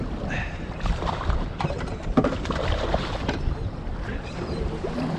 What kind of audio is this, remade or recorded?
remade